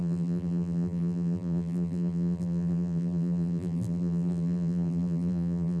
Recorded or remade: remade